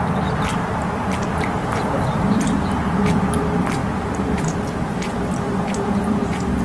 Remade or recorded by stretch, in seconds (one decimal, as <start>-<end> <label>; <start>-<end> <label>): 0.0-0.5 recorded; 0.5-3.3 remade; 3.3-3.8 recorded; 3.8-6.6 remade